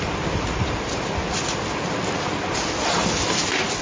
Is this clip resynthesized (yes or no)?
no